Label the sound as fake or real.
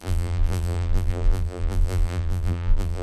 fake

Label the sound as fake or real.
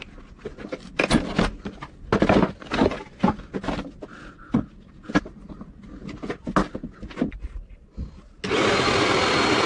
real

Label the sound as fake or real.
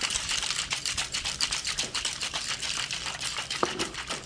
fake